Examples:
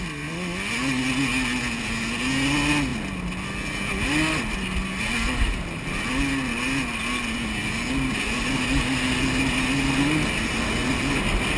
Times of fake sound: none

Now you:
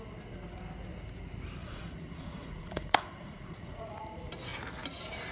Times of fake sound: 1.6-3.9 (vocoder, Vocos)

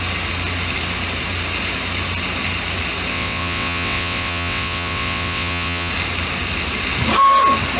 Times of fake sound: 3.1-5.9 (vocoder, WaveNeXt)

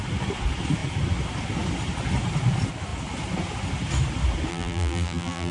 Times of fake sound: 4.5-5.5 (vocoder, BigVGAN v2)

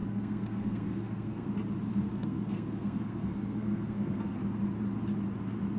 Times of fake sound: 0.0-1.5 (codec, SNAC); 1.9-4.4